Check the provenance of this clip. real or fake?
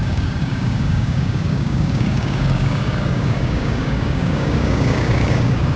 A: fake